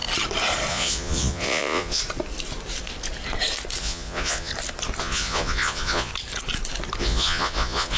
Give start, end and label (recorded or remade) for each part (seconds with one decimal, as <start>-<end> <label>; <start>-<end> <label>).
0.0-0.7 recorded; 0.7-2.0 remade; 2.0-3.8 recorded; 3.8-4.5 remade; 4.5-5.0 recorded; 5.0-6.1 remade; 6.1-7.0 recorded; 7.0-8.0 remade